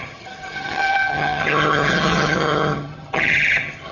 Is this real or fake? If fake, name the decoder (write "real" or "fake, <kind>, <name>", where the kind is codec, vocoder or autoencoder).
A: fake, vocoder, HiFi-GAN